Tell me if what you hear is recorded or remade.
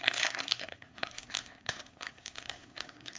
remade